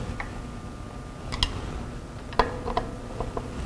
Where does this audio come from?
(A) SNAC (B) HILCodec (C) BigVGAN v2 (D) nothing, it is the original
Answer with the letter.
D